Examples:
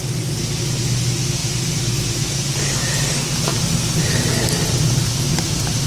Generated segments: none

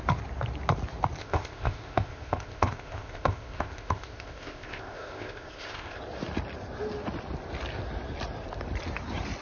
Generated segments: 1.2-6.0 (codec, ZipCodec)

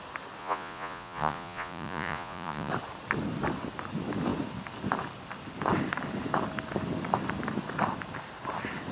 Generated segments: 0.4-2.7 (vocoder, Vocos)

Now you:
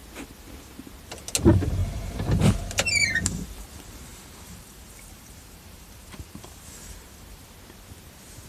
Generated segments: 1.8-2.5 (vocoder, BigVGAN v2); 4.1-7.4